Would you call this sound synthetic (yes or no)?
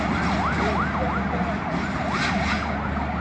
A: no